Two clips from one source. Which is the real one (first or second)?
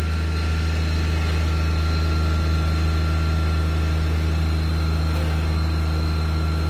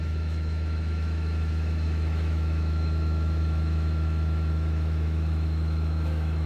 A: first